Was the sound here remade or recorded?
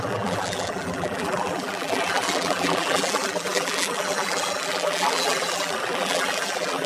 remade